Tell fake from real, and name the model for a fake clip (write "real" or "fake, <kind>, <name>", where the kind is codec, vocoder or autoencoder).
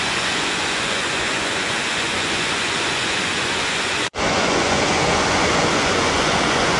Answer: fake, vocoder, Vocos